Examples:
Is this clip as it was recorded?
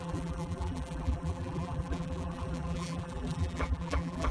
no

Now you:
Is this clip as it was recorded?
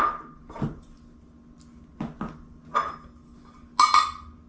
yes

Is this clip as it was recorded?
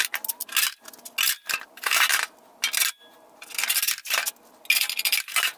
yes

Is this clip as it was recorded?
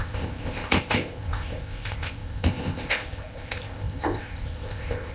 no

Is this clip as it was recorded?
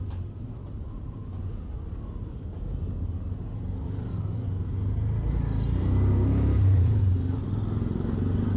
yes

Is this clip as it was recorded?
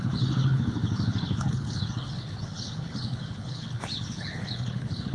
no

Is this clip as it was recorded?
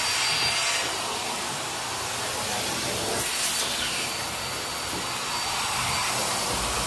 yes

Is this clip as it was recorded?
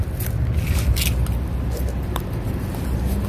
yes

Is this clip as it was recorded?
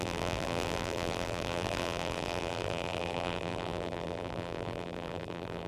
no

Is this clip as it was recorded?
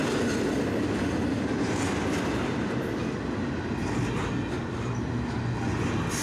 yes